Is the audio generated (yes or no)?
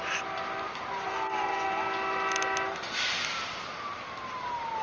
no